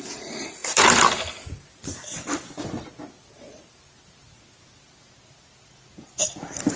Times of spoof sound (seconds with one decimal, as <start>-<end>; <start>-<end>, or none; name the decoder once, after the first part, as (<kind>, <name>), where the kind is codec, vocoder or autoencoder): none